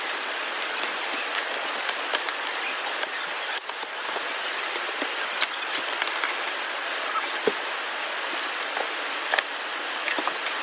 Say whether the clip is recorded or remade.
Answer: recorded